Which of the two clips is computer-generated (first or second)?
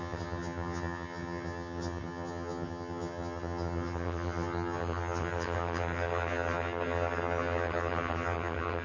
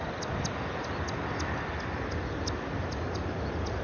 first